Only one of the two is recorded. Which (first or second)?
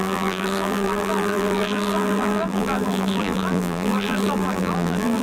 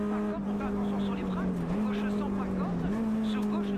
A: second